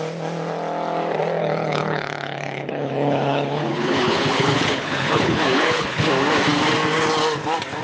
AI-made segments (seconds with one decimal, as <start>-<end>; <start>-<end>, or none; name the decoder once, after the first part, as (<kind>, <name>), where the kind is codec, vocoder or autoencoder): 1.4-6.1 (codec, HILCodec)